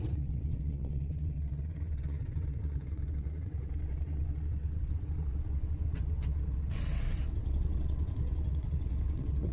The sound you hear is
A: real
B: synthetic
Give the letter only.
B